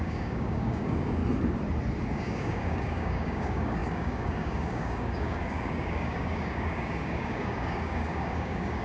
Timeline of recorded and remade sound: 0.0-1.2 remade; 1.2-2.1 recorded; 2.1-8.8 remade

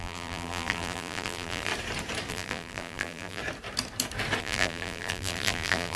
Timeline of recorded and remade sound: 0.0-1.7 remade; 1.7-2.3 recorded; 2.3-3.4 remade; 3.4-4.4 recorded; 4.4-6.0 remade

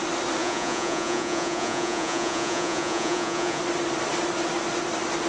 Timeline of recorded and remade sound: 0.0-0.4 recorded; 0.4-3.6 remade; 3.6-5.3 recorded

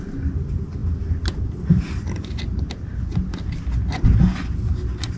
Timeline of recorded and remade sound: 0.0-5.2 recorded

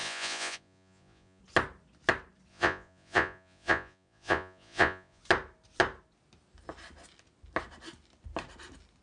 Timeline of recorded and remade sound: 0.0-1.4 remade; 1.4-2.5 recorded; 2.5-5.2 remade; 5.2-9.0 recorded

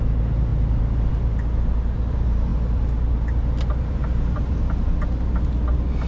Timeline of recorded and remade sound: 0.0-6.1 recorded